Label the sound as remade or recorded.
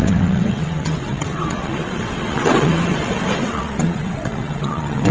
remade